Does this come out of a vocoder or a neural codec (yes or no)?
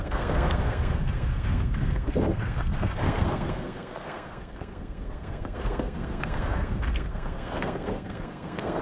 yes